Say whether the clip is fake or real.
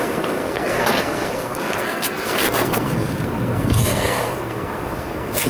fake